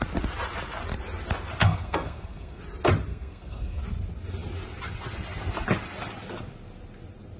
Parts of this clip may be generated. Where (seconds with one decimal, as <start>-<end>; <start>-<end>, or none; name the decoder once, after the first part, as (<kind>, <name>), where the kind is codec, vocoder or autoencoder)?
1.6-2.6 (codec, SNAC); 3.1-3.8